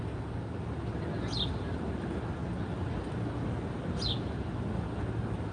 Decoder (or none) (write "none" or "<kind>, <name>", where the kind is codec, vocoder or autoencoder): none